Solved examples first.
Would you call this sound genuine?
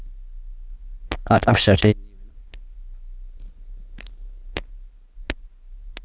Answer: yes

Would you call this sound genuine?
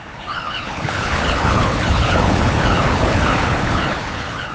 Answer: no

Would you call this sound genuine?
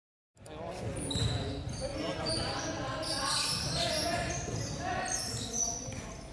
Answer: yes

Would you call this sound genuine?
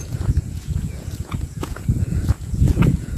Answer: no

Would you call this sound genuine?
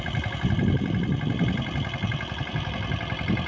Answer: yes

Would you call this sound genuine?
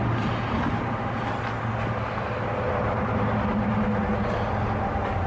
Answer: yes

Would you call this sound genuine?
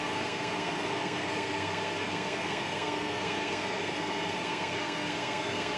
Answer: no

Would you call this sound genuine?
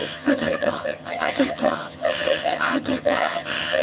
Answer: no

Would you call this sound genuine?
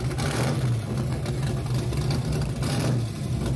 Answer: yes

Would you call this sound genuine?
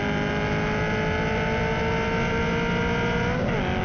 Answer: yes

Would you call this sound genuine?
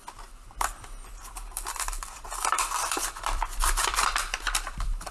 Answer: no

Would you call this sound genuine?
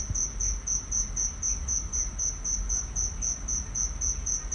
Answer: yes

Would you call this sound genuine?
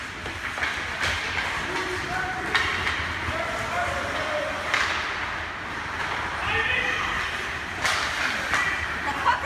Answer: yes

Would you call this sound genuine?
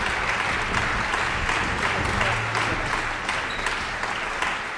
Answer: yes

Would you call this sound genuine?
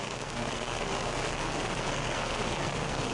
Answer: no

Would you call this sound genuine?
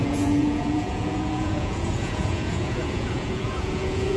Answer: no